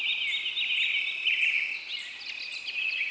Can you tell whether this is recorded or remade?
recorded